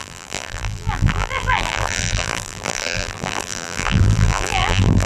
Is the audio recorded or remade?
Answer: remade